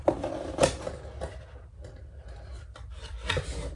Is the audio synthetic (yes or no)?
no